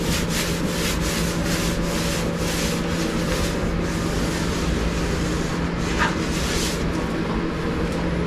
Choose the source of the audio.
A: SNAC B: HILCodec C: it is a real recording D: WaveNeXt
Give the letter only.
C